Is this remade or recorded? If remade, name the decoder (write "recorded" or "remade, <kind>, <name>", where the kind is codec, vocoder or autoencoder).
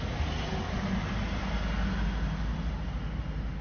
recorded